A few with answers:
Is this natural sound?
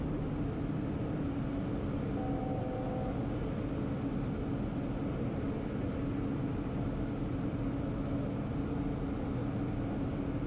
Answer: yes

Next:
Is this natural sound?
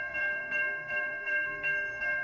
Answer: no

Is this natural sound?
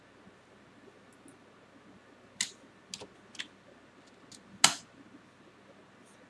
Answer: yes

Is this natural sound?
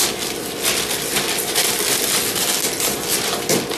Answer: yes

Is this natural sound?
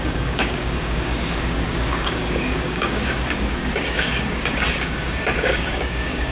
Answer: no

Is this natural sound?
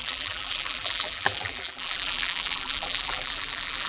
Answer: no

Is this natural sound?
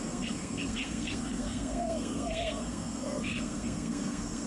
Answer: no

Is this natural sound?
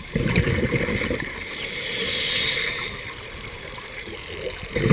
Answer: no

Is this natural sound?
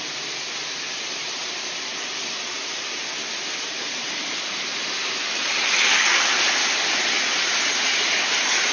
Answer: yes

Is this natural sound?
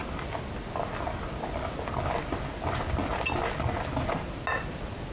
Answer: yes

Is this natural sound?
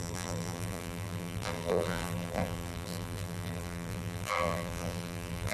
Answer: no